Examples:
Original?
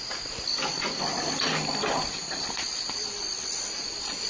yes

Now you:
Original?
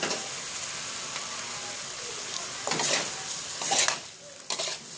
yes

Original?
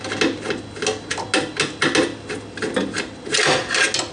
yes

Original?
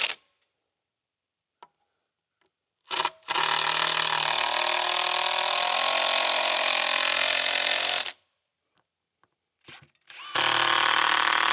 yes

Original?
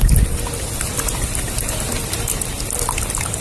yes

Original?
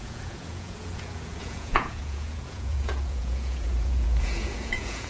no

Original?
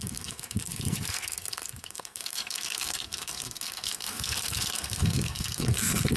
no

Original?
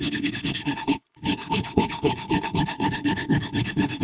no